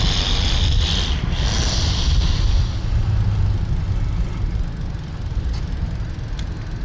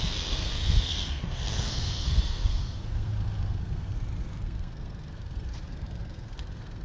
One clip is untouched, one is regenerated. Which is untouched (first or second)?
first